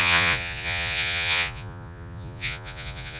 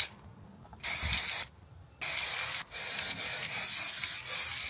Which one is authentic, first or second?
second